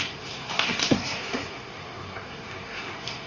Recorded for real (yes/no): no